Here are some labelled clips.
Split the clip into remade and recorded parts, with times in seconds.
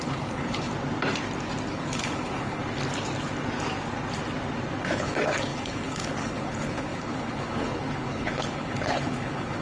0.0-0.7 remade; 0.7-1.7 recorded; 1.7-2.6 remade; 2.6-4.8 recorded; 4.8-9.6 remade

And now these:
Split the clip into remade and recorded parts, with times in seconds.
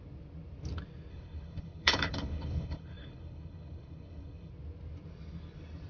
0.0-1.1 recorded; 1.1-4.5 remade; 4.5-5.9 recorded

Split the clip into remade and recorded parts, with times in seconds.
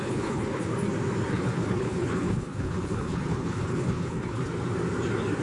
0.0-0.7 remade; 0.7-1.3 recorded; 1.3-4.5 remade; 4.5-5.4 recorded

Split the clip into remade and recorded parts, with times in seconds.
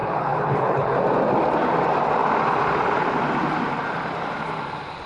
0.0-1.0 remade; 1.0-5.1 recorded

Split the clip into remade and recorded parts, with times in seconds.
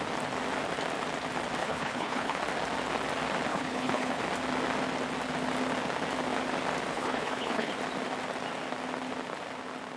0.0-1.6 recorded; 1.6-2.4 remade; 2.4-3.5 recorded; 3.5-4.2 remade; 4.2-6.9 recorded; 6.9-7.7 remade; 7.7-10.0 recorded